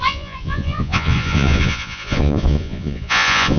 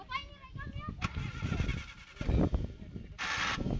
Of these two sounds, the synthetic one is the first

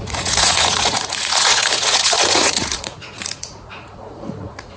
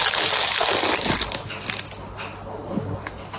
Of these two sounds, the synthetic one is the first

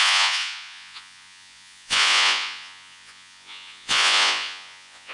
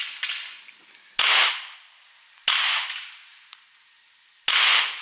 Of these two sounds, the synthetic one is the first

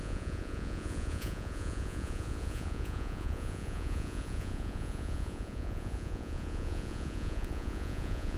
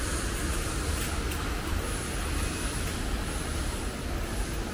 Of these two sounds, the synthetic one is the first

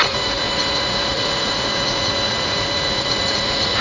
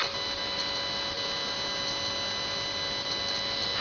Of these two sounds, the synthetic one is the first